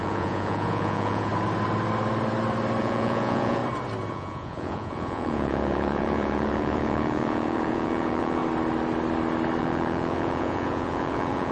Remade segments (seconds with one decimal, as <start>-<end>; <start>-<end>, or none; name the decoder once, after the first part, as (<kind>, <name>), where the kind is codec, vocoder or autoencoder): 0.0-1.3 (vocoder, Vocos); 2.8-3.6; 4.1-8.4; 9.6-11.5